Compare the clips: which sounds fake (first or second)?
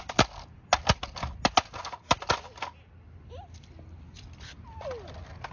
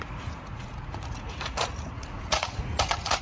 second